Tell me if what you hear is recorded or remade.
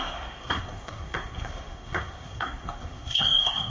remade